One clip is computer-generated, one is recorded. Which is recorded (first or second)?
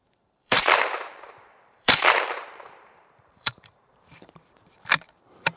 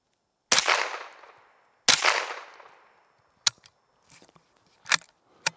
second